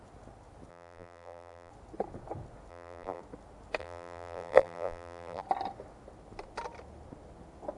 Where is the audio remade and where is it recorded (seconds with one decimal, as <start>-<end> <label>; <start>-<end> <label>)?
0.0-0.7 recorded; 0.7-1.7 remade; 1.7-2.7 recorded; 2.7-3.2 remade; 3.2-3.8 recorded; 3.8-5.4 remade; 5.4-7.8 recorded